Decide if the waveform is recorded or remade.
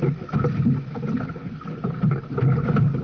recorded